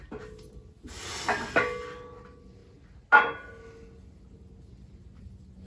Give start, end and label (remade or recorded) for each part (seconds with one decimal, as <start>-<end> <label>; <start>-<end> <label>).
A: 0.0-5.7 recorded